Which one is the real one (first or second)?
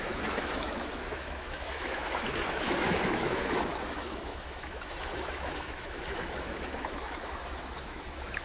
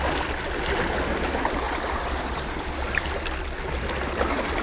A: second